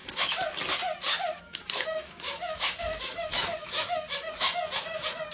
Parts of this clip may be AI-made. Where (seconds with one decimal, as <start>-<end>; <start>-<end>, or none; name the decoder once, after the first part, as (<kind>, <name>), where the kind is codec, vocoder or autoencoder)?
0.0-0.6 (autoencoder, DAC-VAE); 1.1-4.3